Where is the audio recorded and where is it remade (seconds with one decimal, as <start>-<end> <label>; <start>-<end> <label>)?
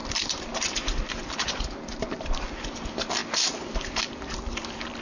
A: 0.0-5.0 remade